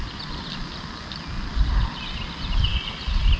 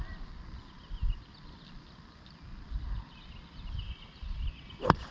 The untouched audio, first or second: first